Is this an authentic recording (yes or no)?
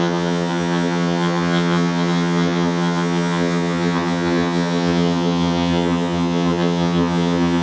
no